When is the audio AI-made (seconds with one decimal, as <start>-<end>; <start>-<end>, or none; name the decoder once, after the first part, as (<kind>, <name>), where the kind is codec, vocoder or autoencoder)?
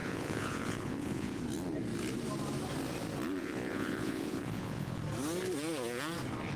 0.0-1.4 (vocoder, Vocos); 3.4-5.0